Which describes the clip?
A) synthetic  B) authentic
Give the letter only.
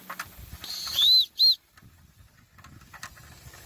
B